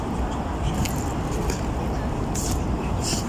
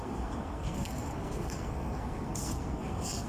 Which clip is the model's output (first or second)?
second